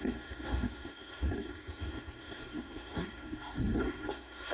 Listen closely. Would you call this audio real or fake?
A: fake